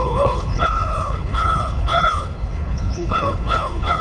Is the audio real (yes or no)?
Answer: no